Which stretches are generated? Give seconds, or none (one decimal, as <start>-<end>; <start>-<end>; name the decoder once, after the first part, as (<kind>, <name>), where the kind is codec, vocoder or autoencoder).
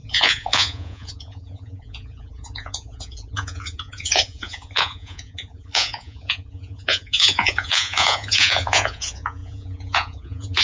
0.0-10.6 (vocoder, Vocos)